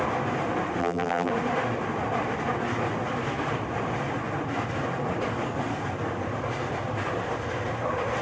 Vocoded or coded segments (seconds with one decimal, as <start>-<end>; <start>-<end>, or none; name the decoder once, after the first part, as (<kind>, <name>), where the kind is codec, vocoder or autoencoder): 0.8-1.3 (vocoder, BigVGAN v2)